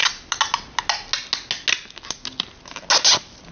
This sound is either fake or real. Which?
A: real